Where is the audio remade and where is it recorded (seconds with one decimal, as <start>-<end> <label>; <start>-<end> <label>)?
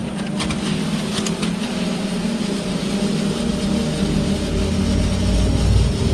0.0-6.1 recorded